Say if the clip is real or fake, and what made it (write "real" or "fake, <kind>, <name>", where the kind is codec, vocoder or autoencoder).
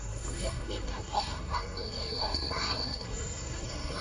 fake, codec, SNAC